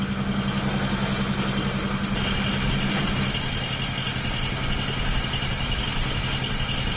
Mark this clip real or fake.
real